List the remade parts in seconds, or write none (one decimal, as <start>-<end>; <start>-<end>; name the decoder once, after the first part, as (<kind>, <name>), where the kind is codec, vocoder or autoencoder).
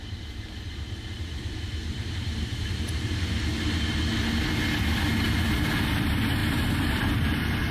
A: 1.8-3.2 (vocoder, BigVGAN v2)